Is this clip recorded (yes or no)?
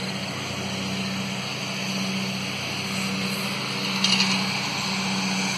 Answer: yes